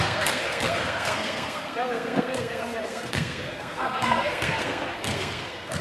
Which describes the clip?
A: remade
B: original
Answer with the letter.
A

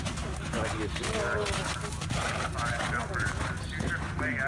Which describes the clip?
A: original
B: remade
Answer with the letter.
A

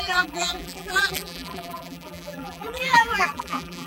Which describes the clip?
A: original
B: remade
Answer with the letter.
B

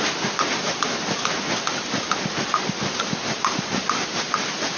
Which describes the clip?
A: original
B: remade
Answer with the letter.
A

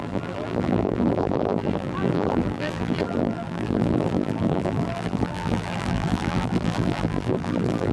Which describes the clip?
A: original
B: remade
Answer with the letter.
B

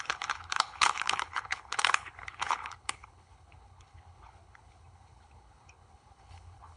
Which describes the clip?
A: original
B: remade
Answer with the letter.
B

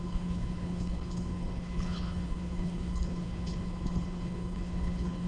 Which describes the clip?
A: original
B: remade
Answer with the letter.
B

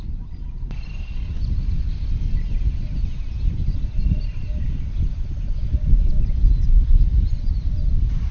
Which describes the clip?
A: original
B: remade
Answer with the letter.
A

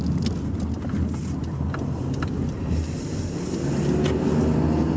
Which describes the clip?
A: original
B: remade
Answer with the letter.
A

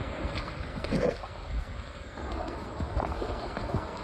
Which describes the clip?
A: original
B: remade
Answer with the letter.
B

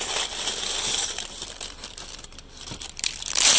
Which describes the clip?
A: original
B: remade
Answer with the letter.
B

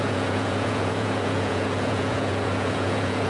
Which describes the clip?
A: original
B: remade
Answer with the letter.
B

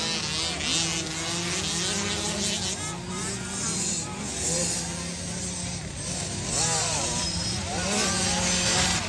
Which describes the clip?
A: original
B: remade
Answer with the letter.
A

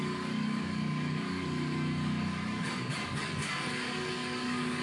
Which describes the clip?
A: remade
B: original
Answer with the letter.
A